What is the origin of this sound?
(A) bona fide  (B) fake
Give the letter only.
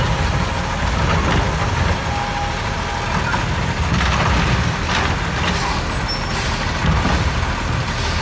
A